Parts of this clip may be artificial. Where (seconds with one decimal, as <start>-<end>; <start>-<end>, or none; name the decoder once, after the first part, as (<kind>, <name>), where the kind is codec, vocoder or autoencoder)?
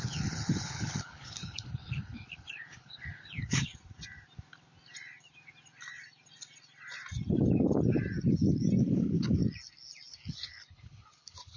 0.0-3.7 (codec, HILCodec); 8.8-9.4; 10.1-11.6